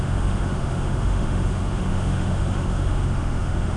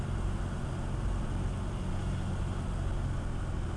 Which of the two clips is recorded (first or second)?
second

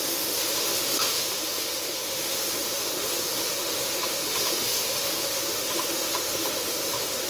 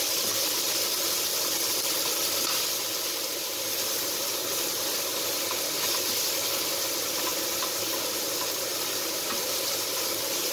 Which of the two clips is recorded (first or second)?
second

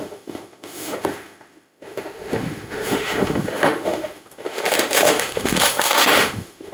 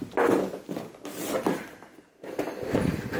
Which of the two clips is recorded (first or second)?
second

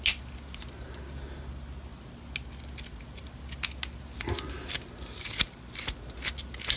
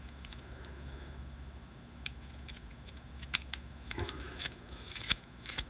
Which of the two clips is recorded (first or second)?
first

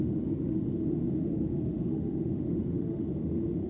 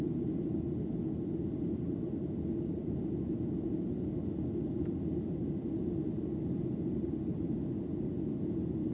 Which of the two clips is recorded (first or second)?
second